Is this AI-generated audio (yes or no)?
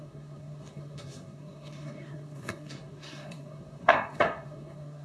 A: yes